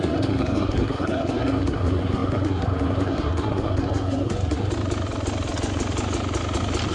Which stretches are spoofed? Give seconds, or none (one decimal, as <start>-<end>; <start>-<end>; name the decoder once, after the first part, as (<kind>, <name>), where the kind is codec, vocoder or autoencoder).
0.0-4.7 (codec, SNAC)